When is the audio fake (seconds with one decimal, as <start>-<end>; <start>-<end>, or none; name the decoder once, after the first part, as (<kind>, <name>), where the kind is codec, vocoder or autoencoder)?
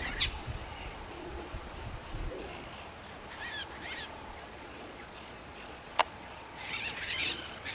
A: 0.0-2.5 (vocoder, Vocos); 4.4-7.7